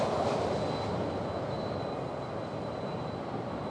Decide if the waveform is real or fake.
real